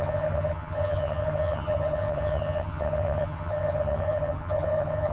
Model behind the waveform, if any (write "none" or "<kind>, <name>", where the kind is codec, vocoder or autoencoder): vocoder, HiFi-GAN